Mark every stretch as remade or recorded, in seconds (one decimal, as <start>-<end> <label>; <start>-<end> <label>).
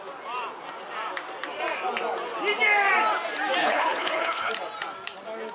0.0-3.6 recorded; 3.6-4.5 remade; 4.5-5.5 recorded